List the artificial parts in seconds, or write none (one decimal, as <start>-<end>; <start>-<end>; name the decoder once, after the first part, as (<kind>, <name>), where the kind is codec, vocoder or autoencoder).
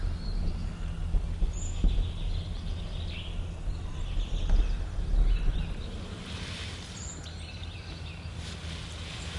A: none